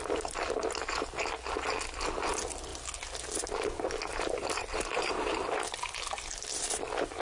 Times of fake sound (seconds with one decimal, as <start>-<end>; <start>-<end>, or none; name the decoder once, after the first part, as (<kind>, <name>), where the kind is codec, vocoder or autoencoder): 4.1-5.1 (vocoder, BigVGAN v2)